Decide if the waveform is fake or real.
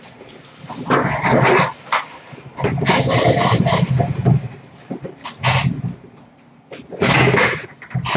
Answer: real